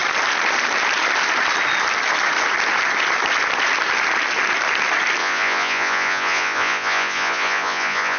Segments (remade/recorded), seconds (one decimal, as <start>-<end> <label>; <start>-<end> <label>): 0.0-5.2 recorded; 5.2-8.2 remade